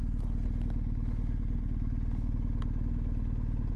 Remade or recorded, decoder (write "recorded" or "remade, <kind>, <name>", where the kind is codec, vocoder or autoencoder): recorded